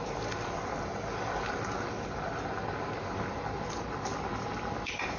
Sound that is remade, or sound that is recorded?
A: recorded